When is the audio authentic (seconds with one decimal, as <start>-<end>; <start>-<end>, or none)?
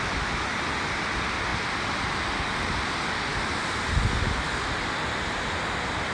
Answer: 0.0-6.1